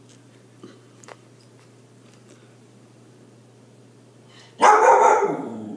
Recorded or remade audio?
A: remade